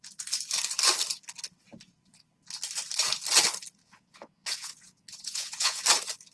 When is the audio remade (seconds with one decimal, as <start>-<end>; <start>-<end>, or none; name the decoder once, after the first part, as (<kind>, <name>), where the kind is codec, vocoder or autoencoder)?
3.8-5.8 (vocoder, Vocos)